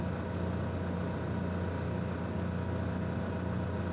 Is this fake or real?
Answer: real